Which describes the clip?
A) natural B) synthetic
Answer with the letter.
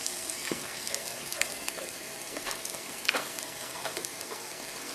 B